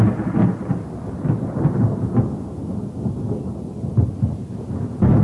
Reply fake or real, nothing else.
real